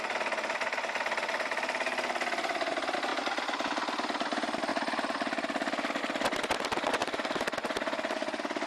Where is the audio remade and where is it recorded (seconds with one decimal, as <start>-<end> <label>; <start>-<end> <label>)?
0.0-8.7 recorded